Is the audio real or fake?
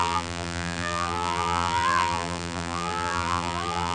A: fake